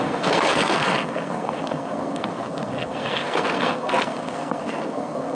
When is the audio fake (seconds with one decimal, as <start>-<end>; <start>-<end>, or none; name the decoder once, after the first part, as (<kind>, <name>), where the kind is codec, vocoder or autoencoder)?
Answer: 0.0-5.3 (codec, SNAC)